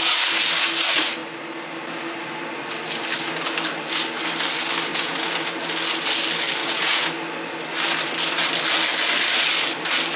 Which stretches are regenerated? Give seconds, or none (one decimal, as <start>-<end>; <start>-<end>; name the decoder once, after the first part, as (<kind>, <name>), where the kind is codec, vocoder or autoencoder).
4.9-5.4 (vocoder, Vocos); 6.6-7.1